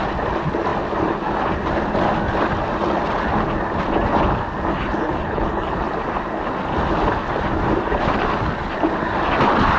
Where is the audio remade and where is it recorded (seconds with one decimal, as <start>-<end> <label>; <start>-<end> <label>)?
0.0-4.7 recorded; 4.7-5.9 remade; 5.9-9.8 recorded